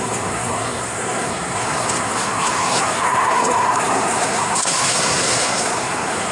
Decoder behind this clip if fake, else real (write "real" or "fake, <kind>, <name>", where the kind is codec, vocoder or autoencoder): fake, codec, SNAC